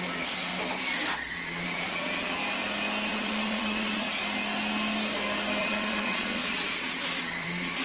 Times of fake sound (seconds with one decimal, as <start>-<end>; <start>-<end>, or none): 0.0-0.5; 1.1-2.4; 3.1-4.2; 5.6-7.8